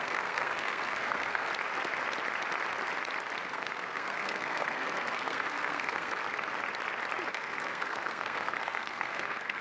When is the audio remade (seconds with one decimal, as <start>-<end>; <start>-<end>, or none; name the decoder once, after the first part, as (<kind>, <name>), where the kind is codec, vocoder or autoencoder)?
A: 0.0-1.5 (codec, SNAC); 3.5-6.2; 7.3-9.6